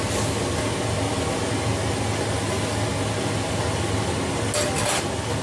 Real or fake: real